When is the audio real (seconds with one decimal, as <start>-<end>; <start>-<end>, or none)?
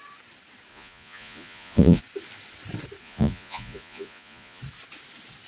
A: 0.0-0.7; 2.0-3.0; 4.6-5.5